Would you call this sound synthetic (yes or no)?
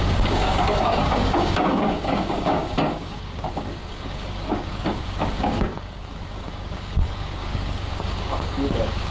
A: yes